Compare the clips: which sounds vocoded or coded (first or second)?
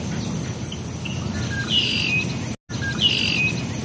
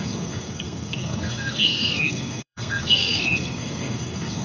second